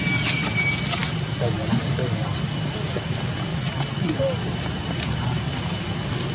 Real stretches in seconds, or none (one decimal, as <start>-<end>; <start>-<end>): 0.0-3.5; 4.1-6.3